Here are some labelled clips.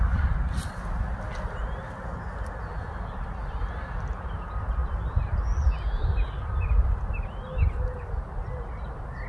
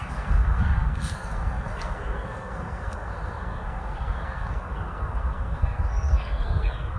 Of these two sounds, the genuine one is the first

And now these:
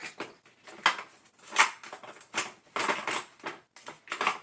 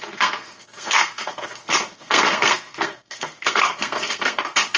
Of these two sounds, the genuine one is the first